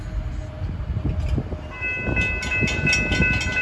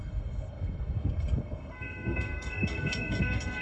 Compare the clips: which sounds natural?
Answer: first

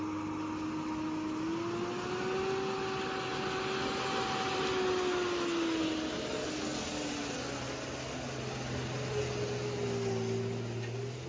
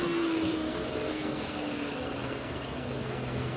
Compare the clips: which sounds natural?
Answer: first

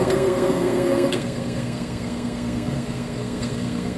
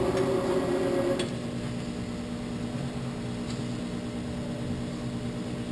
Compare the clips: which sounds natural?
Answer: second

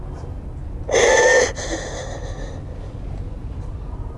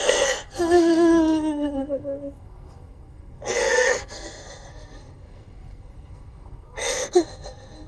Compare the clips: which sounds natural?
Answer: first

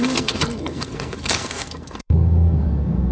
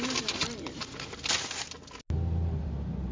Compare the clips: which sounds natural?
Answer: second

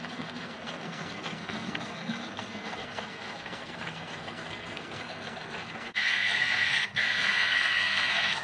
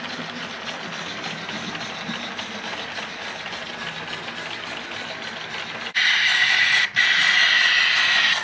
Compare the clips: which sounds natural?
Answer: second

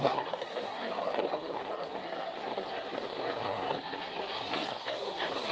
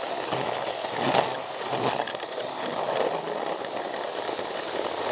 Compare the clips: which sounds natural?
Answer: second